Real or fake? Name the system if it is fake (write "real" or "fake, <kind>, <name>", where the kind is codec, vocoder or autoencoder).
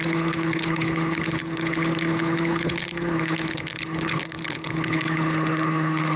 fake, codec, HILCodec